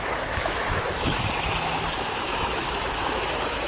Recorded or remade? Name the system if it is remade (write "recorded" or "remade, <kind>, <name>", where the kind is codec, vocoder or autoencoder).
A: remade, autoencoder, DAC-VAE